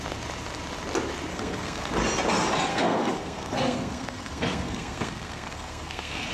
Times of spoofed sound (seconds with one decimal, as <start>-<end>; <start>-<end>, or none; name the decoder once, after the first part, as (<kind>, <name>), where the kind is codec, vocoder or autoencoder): 1.3-1.9 (codec, SNAC); 2.7-6.3